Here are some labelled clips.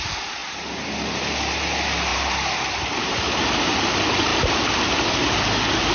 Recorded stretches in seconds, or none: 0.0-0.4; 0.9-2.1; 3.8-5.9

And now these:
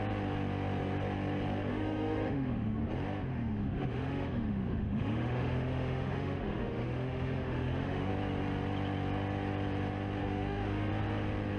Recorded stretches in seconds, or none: 0.0-1.7; 2.8-3.3; 8.1-10.2; 10.9-11.6

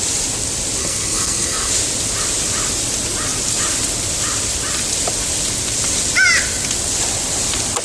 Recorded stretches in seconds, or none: 0.0-0.8; 1.7-7.8

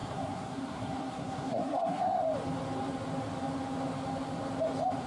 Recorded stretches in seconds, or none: 2.2-5.1

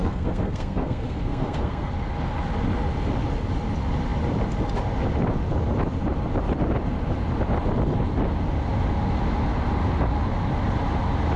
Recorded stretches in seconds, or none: 1.9-11.4

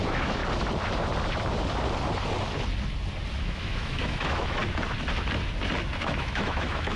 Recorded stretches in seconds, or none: 0.4-3.3; 4.6-6.0